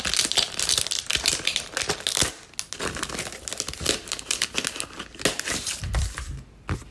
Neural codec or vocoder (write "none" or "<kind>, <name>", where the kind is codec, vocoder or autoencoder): none